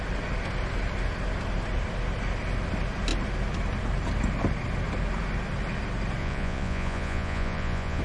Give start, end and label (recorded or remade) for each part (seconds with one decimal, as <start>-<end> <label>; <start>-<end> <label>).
0.0-6.2 recorded; 6.2-8.0 remade